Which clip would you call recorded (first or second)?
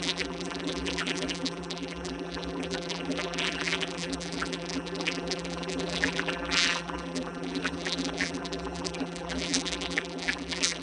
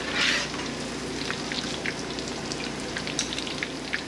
second